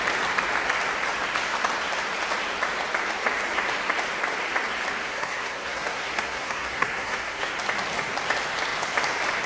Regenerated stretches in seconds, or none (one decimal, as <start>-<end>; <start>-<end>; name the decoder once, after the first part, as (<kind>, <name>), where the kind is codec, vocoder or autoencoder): 5.0-7.5 (codec, SNAC)